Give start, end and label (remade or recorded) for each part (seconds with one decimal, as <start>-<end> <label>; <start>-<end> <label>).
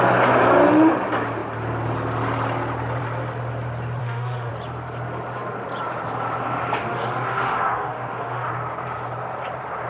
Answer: 0.0-4.0 recorded; 4.0-4.5 remade; 4.5-6.8 recorded; 6.8-8.5 remade; 8.5-9.9 recorded